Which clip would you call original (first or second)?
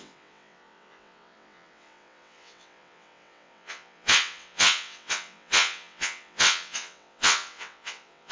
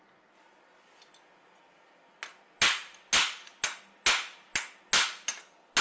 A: second